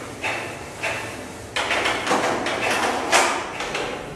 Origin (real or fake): real